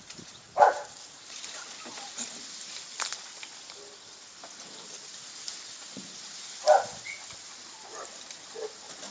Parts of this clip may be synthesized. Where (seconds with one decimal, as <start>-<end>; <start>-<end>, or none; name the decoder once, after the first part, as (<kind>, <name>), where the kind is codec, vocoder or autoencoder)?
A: none